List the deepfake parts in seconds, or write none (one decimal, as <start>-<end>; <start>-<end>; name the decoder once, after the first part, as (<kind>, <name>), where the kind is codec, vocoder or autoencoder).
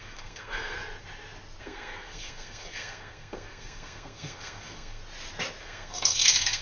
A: 0.0-0.8 (codec, SNAC); 1.6-5.0; 5.6-6.6